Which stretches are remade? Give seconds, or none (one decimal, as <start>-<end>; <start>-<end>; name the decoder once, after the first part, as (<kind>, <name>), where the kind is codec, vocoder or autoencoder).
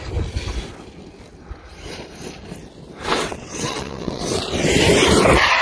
3.1-4.4 (vocoder, WaveNeXt)